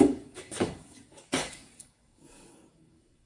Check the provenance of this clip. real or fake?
fake